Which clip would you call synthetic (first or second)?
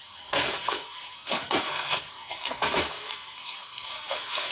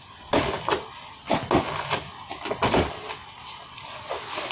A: first